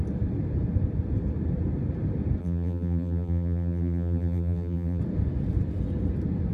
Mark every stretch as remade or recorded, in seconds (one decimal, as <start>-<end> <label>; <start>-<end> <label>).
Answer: 0.0-2.4 recorded; 2.4-5.0 remade; 5.0-6.5 recorded